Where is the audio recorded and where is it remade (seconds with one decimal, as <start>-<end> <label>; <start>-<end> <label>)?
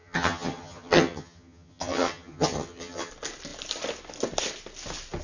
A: 0.0-3.1 remade; 3.1-5.2 recorded